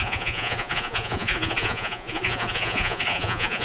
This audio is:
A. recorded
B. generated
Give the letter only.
B